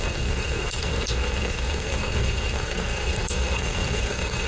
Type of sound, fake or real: fake